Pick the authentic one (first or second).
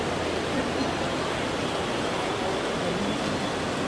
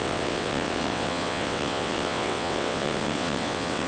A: first